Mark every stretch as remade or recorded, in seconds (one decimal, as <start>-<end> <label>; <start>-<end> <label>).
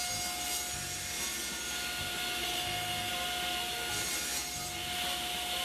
0.0-2.4 recorded; 2.4-3.1 remade; 3.1-5.6 recorded